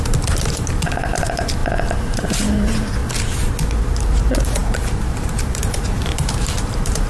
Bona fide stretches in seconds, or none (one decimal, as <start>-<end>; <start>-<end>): 1.6-2.1; 3.0-3.8